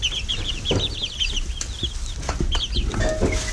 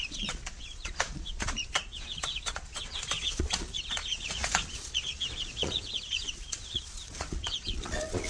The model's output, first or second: second